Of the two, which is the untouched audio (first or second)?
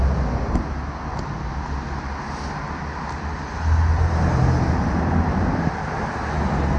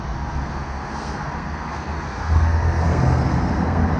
first